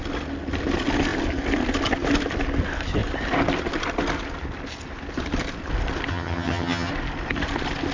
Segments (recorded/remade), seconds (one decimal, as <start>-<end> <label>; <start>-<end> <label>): 0.0-6.1 recorded; 6.1-6.9 remade; 6.9-7.9 recorded